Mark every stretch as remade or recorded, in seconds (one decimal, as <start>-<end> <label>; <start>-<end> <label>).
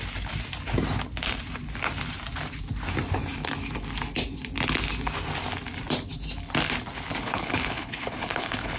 0.0-7.2 recorded; 7.2-8.8 remade